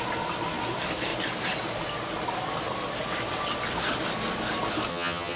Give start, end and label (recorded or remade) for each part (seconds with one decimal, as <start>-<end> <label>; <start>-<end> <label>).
0.0-4.9 recorded; 4.9-5.4 remade